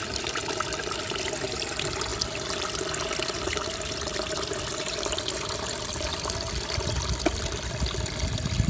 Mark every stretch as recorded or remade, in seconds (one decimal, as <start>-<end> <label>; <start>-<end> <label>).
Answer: 0.0-0.4 recorded; 0.4-1.0 remade; 1.0-2.1 recorded; 2.1-6.1 remade; 6.1-8.7 recorded